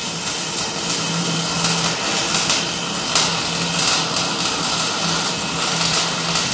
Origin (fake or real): real